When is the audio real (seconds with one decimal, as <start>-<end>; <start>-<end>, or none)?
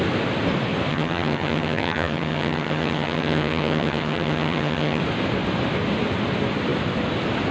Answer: 0.0-0.9; 5.0-7.5